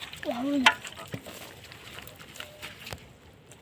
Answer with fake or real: real